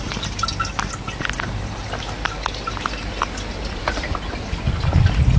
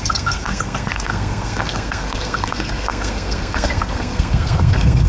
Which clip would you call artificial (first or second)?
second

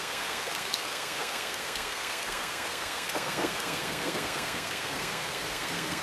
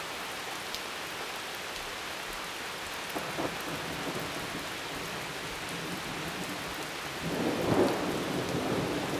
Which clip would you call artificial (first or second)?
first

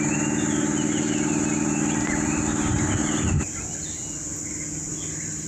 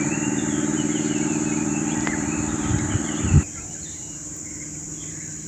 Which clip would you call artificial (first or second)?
second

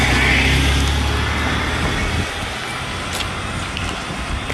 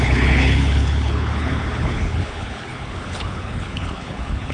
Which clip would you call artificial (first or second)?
second